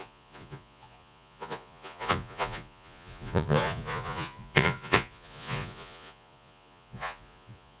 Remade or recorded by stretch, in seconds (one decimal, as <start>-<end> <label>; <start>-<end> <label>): 0.0-7.8 remade